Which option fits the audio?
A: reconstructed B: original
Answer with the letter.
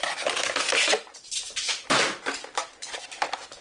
B